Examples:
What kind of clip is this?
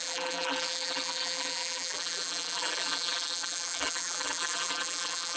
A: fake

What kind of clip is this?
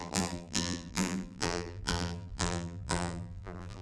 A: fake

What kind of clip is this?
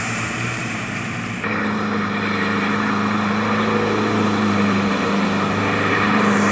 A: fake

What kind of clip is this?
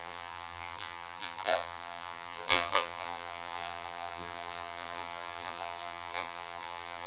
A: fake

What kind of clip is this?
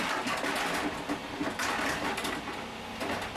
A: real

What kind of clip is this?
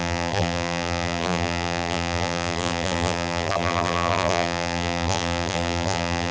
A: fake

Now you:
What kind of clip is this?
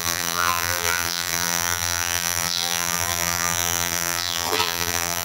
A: fake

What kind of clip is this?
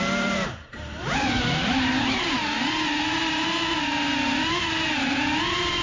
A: fake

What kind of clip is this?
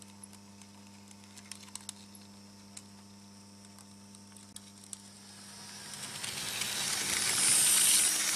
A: real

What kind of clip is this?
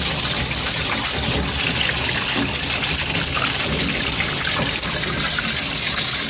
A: real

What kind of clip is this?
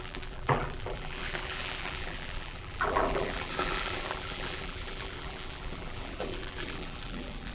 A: fake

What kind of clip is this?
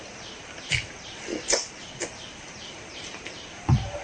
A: fake